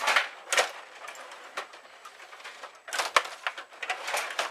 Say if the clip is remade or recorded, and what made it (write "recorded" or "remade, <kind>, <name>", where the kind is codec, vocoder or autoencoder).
recorded